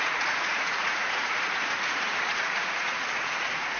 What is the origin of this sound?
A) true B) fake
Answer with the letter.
B